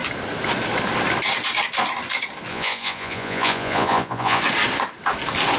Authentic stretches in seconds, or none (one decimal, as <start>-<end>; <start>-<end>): 0.0-2.5; 4.4-5.6